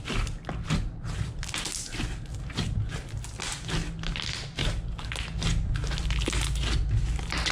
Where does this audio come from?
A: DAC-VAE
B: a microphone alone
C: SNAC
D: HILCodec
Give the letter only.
B